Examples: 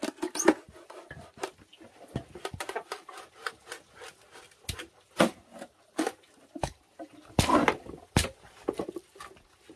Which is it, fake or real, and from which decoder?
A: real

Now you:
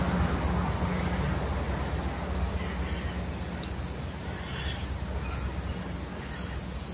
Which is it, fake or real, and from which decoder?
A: real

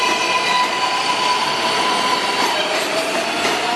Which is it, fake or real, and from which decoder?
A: real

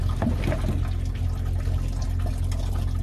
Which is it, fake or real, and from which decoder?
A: real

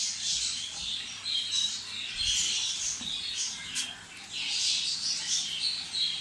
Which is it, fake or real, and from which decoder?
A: real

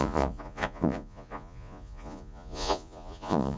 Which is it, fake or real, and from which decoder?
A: fake, vocoder, Vocos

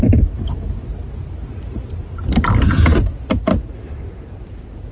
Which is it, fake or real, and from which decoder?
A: real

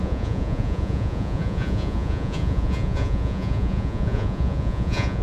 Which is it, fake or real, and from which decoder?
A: fake, vocoder, Vocos